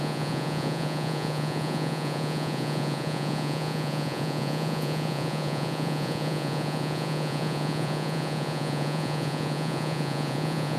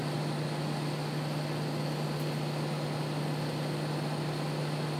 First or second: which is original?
second